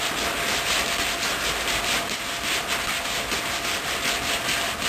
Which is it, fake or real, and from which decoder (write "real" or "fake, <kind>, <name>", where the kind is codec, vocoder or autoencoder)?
real